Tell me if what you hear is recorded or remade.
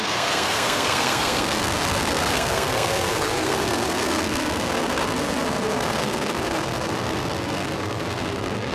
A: remade